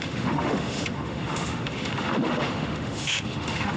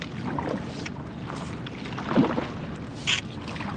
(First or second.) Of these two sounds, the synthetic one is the first